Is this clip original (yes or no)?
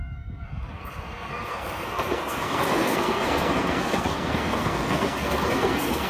no